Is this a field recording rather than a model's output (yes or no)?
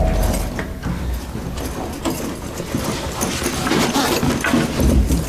yes